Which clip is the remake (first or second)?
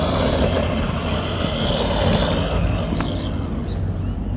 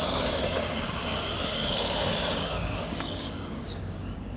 second